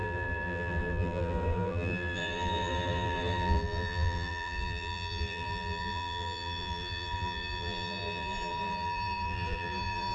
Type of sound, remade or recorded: remade